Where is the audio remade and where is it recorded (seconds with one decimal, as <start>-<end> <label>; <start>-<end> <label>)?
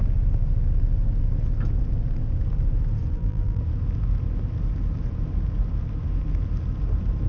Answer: 0.0-3.1 recorded; 3.1-3.6 remade; 3.6-7.3 recorded